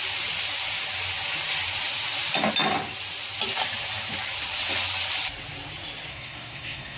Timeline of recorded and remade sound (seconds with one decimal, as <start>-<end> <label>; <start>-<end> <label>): 0.0-6.1 recorded; 6.1-7.0 remade